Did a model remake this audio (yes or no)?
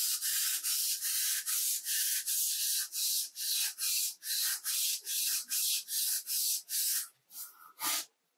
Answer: yes